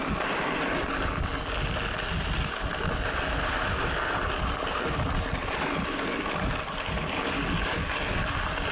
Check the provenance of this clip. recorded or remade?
recorded